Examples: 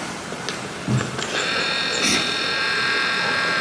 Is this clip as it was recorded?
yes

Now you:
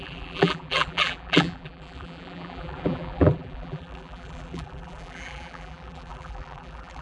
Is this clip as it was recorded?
no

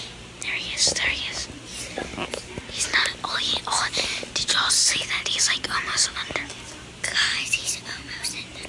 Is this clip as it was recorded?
yes